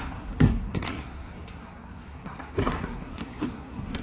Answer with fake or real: fake